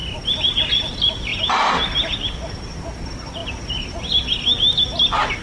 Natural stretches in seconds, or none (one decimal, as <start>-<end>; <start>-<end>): 0.0-5.4